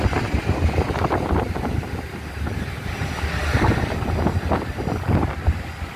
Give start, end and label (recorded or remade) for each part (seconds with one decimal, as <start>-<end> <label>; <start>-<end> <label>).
0.0-6.0 recorded